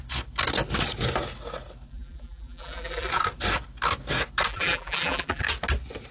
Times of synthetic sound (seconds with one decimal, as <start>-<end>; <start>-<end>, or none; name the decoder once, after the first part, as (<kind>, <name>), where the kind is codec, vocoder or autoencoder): 1.9-3.1 (vocoder, BigVGAN v2); 4.5-5.4